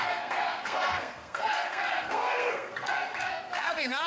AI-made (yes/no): yes